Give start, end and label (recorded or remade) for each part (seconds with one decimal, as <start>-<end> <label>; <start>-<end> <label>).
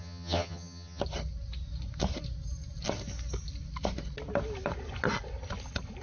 0.0-1.0 remade; 1.0-6.0 recorded